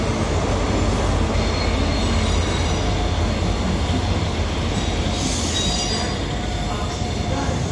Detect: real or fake real